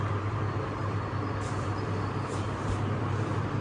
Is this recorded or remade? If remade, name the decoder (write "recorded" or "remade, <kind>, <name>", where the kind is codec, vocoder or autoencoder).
remade, vocoder, BigVGAN v2